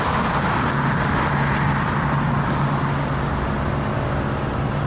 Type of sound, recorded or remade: recorded